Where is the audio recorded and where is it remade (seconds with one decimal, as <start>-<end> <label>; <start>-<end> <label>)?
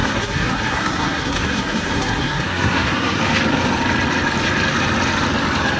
0.0-3.2 remade; 3.2-5.8 recorded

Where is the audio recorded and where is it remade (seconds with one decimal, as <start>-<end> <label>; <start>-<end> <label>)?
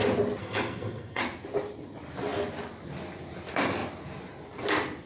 0.0-0.4 recorded; 0.4-1.2 remade; 1.2-5.1 recorded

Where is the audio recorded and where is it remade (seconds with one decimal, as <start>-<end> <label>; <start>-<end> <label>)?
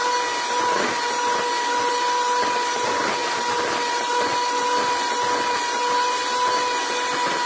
0.0-7.5 recorded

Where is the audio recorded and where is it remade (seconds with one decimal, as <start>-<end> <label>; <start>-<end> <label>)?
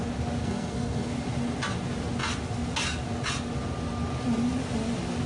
0.0-0.4 recorded; 0.4-1.1 remade; 1.1-5.3 recorded